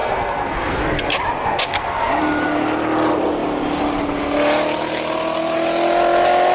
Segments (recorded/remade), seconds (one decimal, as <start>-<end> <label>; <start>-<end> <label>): 0.0-0.8 remade; 0.8-1.4 recorded; 1.4-2.1 remade; 2.1-6.5 recorded